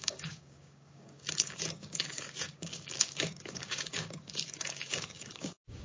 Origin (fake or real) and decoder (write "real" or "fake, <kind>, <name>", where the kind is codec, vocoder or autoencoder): fake, codec, DAC